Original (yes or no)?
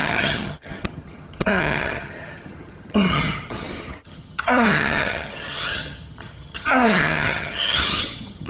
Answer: no